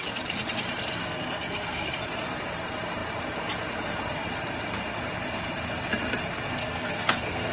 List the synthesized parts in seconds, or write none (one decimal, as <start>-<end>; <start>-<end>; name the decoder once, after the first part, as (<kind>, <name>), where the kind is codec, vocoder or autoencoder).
1.0-1.9 (codec, SNAC); 6.6-7.5